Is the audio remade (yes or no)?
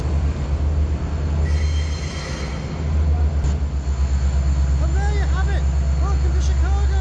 no